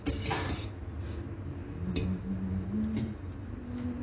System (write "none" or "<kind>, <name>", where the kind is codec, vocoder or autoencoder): none